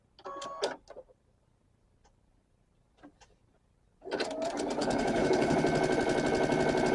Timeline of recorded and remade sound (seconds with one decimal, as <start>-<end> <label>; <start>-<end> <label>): 0.0-4.8 recorded; 4.8-5.6 remade; 5.6-6.9 recorded